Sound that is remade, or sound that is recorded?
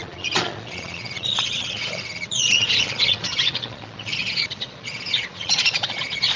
remade